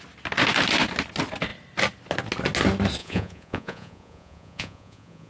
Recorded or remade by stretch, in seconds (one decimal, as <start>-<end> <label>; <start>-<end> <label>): 0.0-3.0 recorded; 3.0-5.3 remade